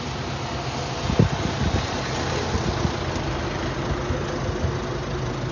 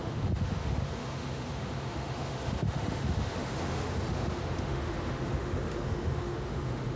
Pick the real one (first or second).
first